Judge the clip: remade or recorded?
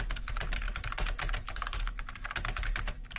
recorded